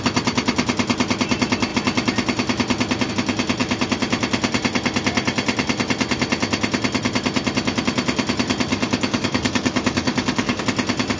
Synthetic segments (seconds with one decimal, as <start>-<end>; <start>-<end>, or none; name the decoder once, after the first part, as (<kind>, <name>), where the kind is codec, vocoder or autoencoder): 8.7-10.6 (codec, DAC)